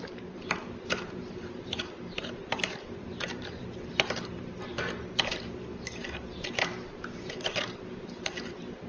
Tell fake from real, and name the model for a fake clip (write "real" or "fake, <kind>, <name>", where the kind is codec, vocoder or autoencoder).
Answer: fake, vocoder, BigVGAN v2